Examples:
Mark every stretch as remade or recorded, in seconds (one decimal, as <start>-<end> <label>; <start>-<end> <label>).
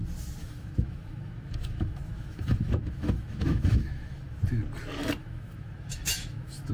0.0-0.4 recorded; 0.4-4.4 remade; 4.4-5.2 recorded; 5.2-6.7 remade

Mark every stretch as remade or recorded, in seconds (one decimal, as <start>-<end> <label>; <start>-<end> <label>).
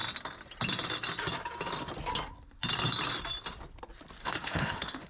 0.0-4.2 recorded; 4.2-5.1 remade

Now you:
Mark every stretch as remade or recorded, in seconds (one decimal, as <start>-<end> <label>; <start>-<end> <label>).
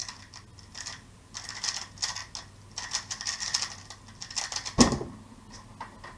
0.0-6.2 recorded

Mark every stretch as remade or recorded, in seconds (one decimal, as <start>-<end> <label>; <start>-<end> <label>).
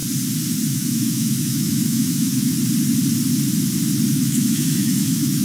0.0-0.7 recorded; 0.7-2.5 remade; 2.5-4.1 recorded; 4.1-5.4 remade